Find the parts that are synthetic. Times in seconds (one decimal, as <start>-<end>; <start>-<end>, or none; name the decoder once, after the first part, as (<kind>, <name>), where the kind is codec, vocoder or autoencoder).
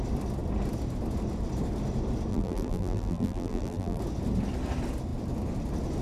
2.3-4.0 (vocoder, BigVGAN v2)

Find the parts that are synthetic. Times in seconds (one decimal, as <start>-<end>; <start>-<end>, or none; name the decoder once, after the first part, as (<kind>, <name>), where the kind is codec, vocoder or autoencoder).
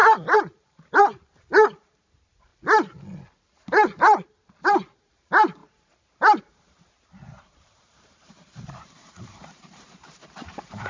0.0-2.5 (vocoder, BigVGAN v2); 5.1-10.9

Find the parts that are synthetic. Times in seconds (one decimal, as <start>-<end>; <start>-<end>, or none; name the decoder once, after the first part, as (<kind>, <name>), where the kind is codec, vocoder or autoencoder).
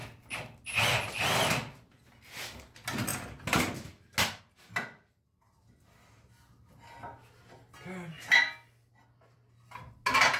none